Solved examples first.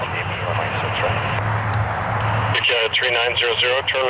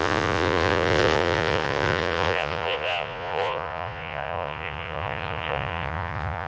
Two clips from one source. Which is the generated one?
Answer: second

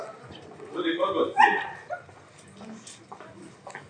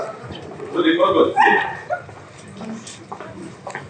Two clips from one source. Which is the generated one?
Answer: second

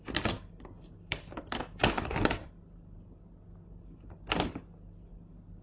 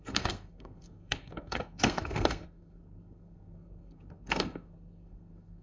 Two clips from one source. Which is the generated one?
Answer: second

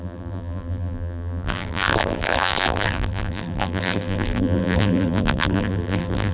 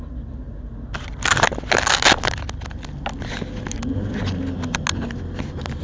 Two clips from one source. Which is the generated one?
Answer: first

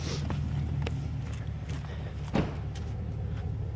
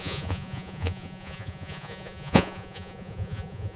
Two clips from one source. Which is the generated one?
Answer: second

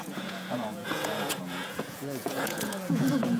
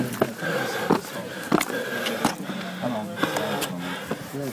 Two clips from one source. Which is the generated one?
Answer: first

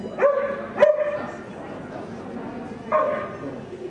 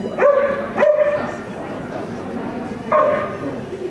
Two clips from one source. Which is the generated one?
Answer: second